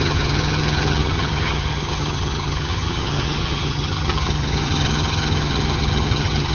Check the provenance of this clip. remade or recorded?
remade